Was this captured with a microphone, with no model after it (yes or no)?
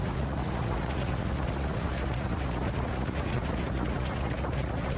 no